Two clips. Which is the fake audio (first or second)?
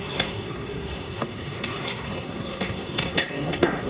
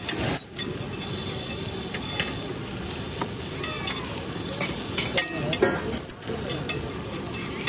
first